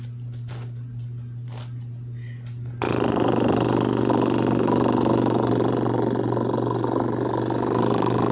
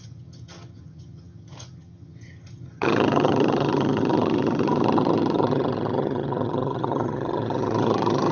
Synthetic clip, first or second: second